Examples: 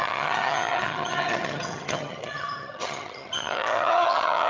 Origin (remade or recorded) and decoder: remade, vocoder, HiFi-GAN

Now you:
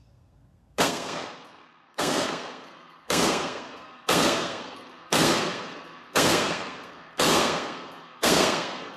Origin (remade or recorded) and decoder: remade, codec, SNAC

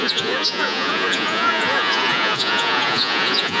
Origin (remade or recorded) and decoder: remade, vocoder, Vocos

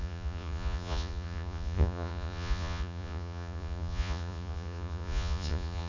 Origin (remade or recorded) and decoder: remade, vocoder, Vocos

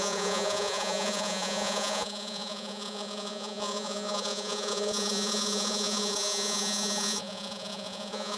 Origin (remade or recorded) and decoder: remade, vocoder, Vocos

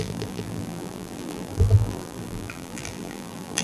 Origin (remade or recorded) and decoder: remade, vocoder, BigVGAN v2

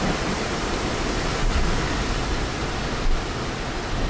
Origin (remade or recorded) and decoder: recorded